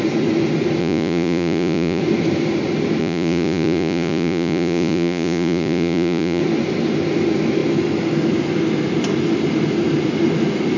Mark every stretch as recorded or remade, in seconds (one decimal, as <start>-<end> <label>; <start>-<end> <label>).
0.0-0.8 recorded; 0.8-2.0 remade; 2.0-3.0 recorded; 3.0-6.4 remade; 6.4-10.8 recorded